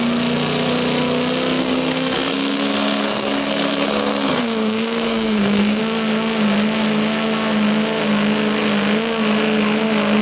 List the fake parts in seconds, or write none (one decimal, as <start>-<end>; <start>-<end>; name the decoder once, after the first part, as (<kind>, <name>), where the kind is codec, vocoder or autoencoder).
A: 1.6-5.8 (codec, SNAC)